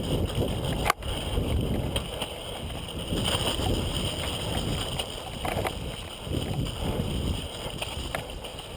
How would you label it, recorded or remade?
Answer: recorded